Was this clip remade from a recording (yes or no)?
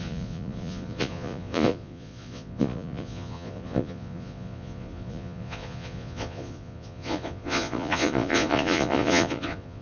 yes